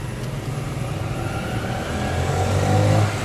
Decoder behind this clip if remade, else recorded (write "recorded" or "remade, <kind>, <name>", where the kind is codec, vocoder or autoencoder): recorded